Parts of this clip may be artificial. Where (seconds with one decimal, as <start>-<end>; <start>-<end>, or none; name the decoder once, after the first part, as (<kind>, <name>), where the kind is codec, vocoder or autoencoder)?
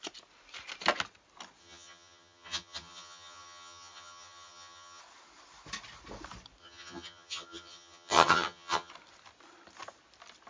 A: 1.6-5.0 (vocoder, HiFi-GAN); 6.6-8.9